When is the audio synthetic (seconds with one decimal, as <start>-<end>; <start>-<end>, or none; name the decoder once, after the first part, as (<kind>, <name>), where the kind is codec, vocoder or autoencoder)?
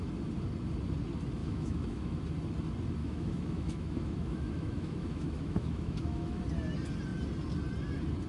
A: 1.4-2.2 (autoencoder, DAC-VAE); 3.0-6.4